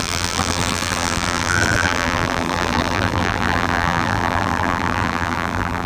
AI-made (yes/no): yes